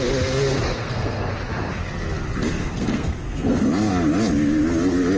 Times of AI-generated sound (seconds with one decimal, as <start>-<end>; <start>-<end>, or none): 0.7-1.2; 2.6-3.6